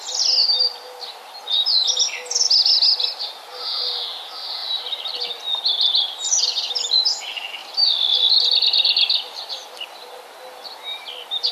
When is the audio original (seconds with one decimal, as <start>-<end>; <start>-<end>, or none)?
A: 0.0-4.6; 5.2-7.6; 9.4-11.5